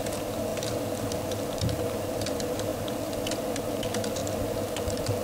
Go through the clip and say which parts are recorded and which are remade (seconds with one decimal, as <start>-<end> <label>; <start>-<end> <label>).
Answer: 0.0-5.2 recorded